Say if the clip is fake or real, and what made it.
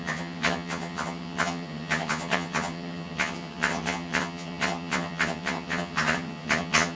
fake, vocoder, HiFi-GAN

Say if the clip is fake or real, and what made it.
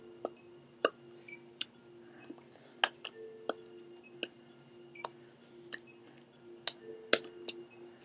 real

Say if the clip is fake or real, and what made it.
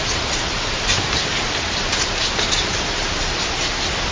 real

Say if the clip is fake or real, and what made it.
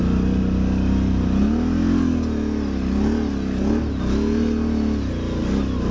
real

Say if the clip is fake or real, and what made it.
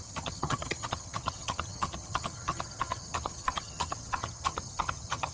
fake, vocoder, HiFi-GAN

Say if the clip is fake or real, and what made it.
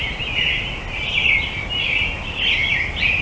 real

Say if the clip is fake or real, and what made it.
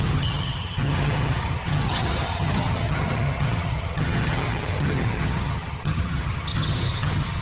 fake, vocoder, HiFi-GAN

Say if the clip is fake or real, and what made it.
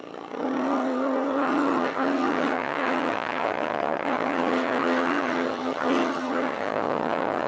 fake, vocoder, HiFi-GAN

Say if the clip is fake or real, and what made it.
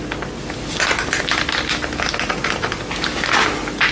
real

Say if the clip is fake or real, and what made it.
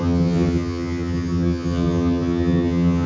fake, vocoder, HiFi-GAN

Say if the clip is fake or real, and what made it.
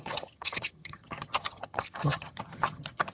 fake, vocoder, HiFi-GAN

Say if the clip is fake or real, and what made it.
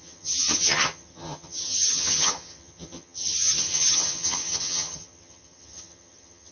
fake, vocoder, HiFi-GAN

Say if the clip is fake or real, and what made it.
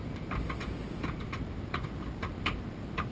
real